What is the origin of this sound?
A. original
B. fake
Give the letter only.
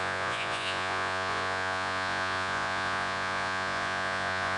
B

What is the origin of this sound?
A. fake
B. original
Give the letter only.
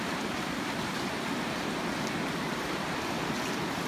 B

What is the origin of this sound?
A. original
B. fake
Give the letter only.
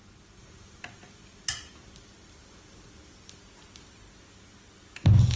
A